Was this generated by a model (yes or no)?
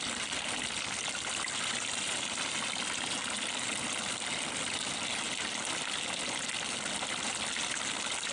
no